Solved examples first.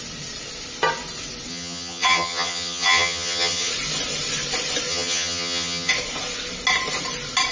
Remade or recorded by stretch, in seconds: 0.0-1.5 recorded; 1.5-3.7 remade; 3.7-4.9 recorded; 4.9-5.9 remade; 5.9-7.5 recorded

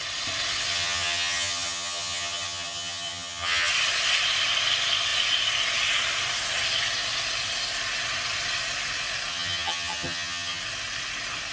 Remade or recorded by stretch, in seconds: 0.0-0.7 recorded; 0.7-3.7 remade; 3.7-9.3 recorded; 9.3-10.6 remade; 10.6-11.5 recorded

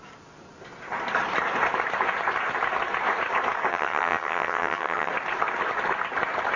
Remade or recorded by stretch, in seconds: 0.0-3.7 recorded; 3.7-5.1 remade; 5.1-6.6 recorded

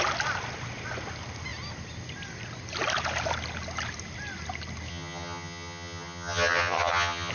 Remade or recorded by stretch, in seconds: 0.0-4.9 recorded; 4.9-7.3 remade

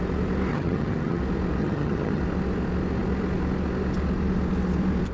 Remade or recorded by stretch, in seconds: 0.0-0.5 recorded; 0.5-1.2 remade; 1.2-1.6 recorded; 1.6-2.2 remade; 2.2-5.1 recorded

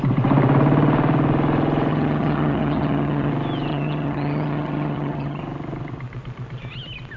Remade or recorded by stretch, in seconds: 0.0-1.9 recorded; 1.9-3.3 remade; 3.3-3.7 recorded; 3.7-5.4 remade; 5.4-7.2 recorded